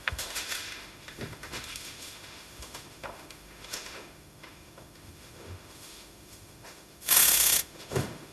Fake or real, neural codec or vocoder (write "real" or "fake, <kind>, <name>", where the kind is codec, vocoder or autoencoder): fake, autoencoder, DAC-VAE